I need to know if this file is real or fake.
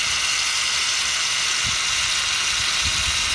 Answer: real